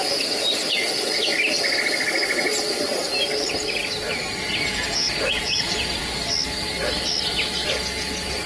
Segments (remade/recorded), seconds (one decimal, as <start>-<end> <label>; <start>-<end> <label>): 0.0-1.3 remade; 1.3-4.4 recorded; 4.4-6.0 remade; 6.0-7.7 recorded; 7.7-8.5 remade